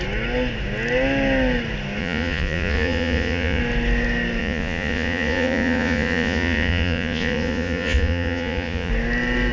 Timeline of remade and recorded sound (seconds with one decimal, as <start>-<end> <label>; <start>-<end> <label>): 0.0-2.0 recorded; 2.0-3.6 remade; 3.6-4.4 recorded; 4.4-8.9 remade; 8.9-9.5 recorded